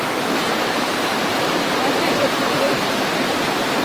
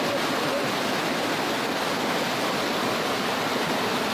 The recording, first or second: second